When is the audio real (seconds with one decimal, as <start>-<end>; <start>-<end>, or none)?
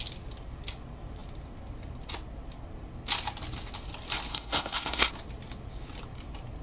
0.0-4.3; 5.1-6.6